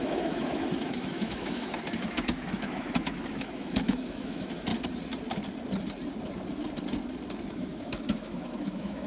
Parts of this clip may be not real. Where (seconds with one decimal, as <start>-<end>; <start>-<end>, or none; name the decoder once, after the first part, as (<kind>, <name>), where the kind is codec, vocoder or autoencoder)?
0.0-4.7 (autoencoder, DAC-VAE); 7.5-9.1